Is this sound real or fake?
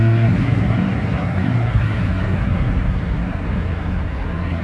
fake